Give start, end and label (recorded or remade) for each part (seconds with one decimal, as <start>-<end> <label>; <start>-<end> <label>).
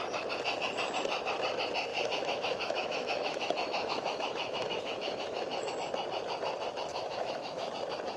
0.0-1.9 recorded; 1.9-5.7 remade; 5.7-6.9 recorded; 6.9-7.7 remade; 7.7-8.2 recorded